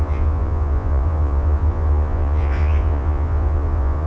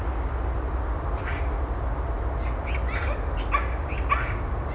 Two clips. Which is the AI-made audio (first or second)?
first